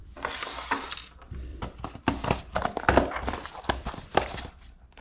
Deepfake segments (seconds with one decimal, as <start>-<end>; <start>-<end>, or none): 0.0-0.9; 1.5-4.5